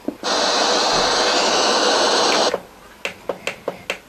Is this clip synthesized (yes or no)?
no